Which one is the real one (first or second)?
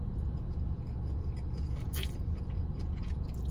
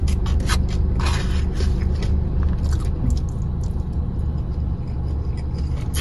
second